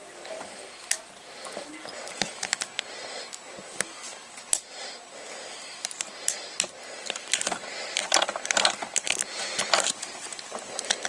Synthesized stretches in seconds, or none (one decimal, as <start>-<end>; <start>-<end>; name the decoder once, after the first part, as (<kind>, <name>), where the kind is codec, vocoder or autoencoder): none